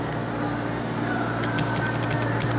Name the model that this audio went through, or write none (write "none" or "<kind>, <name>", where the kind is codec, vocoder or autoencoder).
none